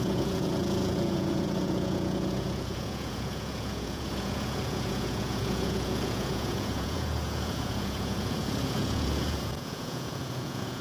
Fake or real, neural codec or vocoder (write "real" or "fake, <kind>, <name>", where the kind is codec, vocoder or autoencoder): fake, vocoder, Vocos